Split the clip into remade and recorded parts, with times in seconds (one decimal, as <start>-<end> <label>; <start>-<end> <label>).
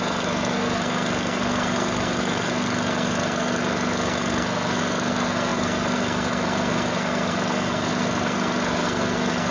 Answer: 0.0-9.5 remade